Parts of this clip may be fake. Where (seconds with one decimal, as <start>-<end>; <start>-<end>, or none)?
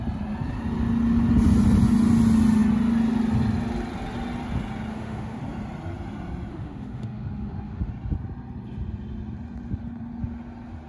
4.9-5.4; 6.5-7.9